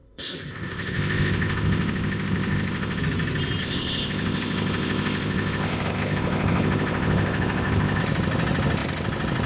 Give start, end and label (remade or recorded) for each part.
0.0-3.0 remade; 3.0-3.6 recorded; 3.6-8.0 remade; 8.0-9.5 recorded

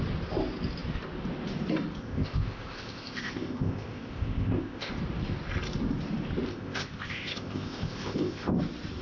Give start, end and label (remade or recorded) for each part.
0.0-2.0 recorded; 2.0-4.9 remade; 4.9-6.5 recorded; 6.5-8.6 remade; 8.6-9.0 recorded

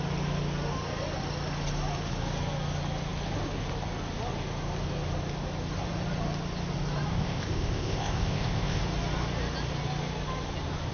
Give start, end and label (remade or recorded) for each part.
0.0-7.1 recorded; 7.1-8.8 remade; 8.8-10.9 recorded

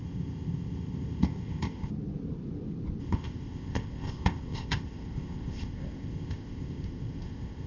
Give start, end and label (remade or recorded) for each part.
0.0-1.9 remade; 1.9-3.0 recorded; 3.0-7.7 remade

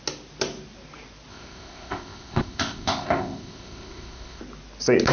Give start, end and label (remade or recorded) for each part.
0.0-1.3 recorded; 1.3-4.4 remade; 4.4-5.1 recorded